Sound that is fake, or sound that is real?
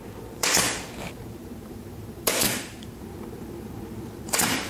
fake